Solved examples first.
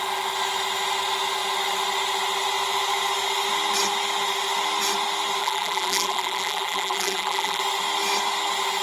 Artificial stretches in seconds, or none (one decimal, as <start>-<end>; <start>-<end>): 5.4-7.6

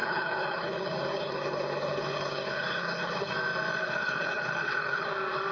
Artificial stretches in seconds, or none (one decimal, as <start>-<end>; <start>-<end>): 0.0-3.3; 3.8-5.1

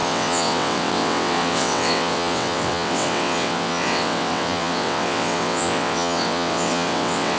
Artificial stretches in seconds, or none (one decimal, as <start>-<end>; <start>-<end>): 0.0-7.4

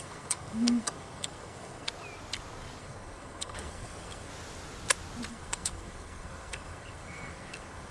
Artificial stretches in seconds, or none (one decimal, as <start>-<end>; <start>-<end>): 0.0-1.9; 2.8-4.3; 5.3-7.9

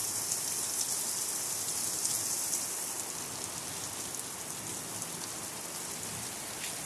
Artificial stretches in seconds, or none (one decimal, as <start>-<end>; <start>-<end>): none

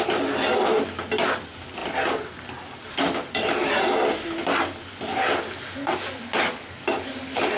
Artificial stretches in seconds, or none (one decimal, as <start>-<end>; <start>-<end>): none

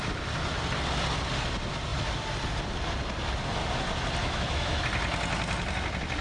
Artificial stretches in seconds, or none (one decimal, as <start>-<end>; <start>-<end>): 4.2-4.8